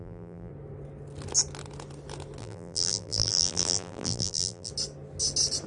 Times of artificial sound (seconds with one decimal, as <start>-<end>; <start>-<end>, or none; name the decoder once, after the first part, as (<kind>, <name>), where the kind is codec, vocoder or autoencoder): 0.0-0.5 (vocoder, BigVGAN v2); 2.4-4.7